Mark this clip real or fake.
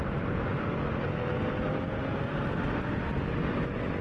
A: real